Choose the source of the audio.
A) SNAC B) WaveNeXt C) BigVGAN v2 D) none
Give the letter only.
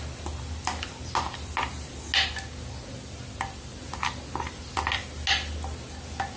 D